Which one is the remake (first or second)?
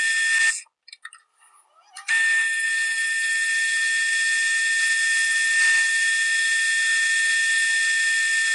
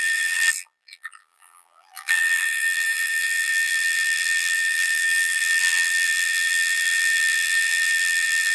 second